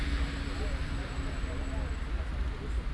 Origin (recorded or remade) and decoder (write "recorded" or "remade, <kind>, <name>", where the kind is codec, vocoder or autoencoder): recorded